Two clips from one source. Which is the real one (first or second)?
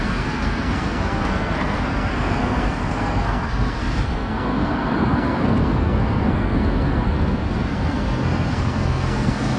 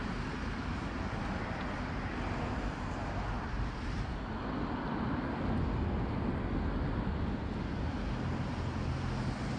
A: second